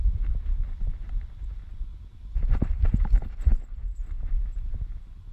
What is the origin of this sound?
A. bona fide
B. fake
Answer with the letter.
A